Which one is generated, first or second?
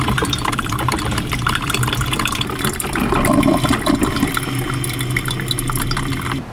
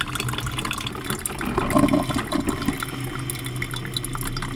first